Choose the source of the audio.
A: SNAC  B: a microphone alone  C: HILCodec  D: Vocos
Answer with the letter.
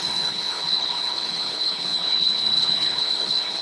C